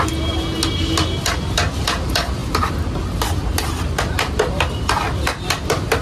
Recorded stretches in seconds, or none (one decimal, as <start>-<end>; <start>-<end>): 0.0-6.0